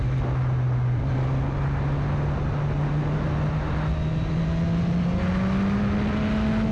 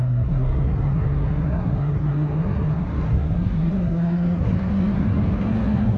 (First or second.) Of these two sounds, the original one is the first